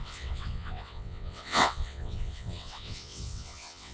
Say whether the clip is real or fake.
fake